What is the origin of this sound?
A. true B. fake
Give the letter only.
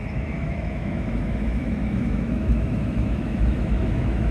B